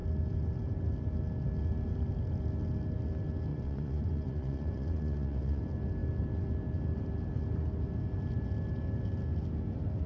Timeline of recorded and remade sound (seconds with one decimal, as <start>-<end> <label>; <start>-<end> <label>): 0.0-3.5 recorded; 3.5-5.6 remade; 5.6-10.1 recorded